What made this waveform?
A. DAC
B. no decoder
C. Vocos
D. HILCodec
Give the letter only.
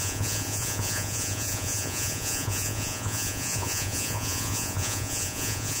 C